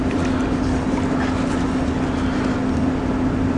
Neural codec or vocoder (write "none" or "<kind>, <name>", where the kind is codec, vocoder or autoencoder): none